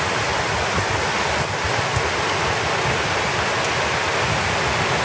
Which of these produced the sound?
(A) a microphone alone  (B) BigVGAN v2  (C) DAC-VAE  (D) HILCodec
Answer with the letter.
A